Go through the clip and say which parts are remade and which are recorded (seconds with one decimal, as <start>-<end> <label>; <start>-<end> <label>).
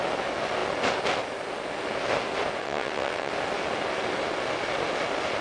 0.0-2.6 recorded; 2.6-3.3 remade; 3.3-5.4 recorded